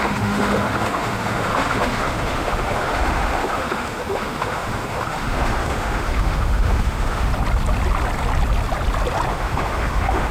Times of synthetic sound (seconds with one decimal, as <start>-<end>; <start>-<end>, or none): 0.0-7.3; 9.3-10.3